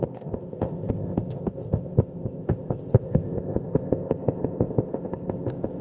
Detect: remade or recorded remade